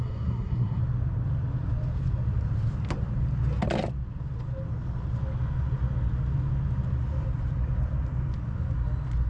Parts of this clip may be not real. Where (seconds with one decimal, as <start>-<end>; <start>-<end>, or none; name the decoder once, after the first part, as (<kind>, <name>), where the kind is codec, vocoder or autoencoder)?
0.0-0.8 (codec, SNAC)